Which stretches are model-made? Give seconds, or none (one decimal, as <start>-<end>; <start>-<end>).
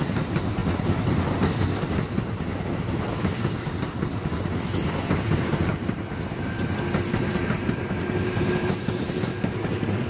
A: 9.3-10.1